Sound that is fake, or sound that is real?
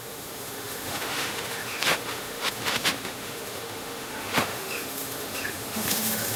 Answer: fake